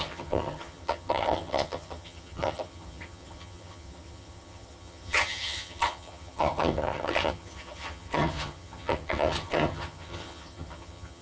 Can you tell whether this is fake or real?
fake